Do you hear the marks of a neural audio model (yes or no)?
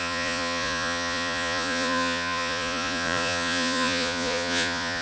yes